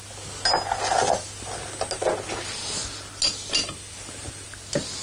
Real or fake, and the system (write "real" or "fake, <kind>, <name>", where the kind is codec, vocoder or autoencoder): real